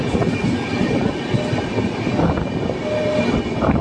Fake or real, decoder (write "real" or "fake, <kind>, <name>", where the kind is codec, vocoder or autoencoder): real